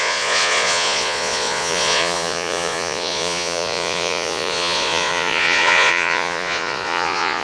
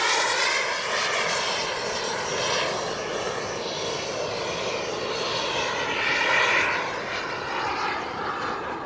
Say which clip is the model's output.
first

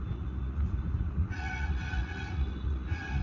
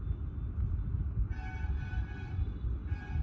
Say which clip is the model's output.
first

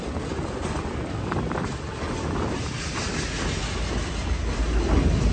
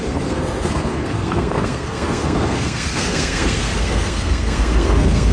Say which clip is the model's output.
second